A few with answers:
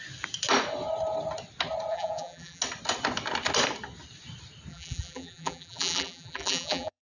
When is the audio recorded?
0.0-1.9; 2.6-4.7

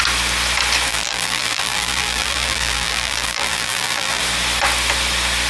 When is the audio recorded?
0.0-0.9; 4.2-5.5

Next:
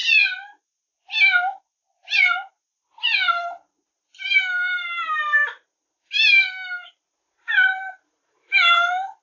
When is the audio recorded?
0.0-4.4; 5.4-6.7

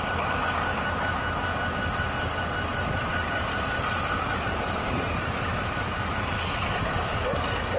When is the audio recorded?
0.0-2.7; 6.8-7.8

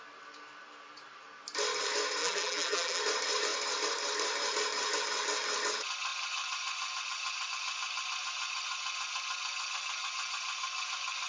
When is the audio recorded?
0.0-2.2; 3.0-11.3

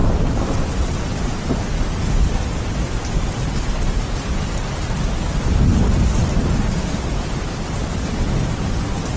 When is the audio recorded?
0.8-9.2